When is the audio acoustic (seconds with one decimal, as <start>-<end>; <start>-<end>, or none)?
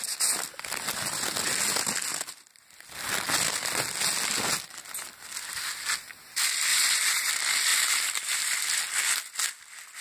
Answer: 0.0-6.7; 7.3-7.7; 8.3-10.0